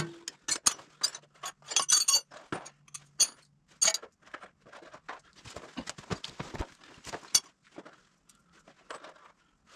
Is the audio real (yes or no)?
yes